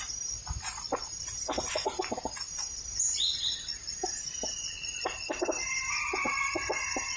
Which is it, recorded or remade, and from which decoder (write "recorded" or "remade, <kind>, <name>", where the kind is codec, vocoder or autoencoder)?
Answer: recorded